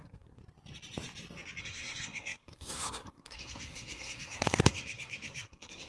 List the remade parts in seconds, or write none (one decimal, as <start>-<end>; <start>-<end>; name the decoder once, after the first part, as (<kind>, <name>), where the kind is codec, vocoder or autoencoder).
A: 0.0-0.4 (codec, SNAC); 1.6-5.9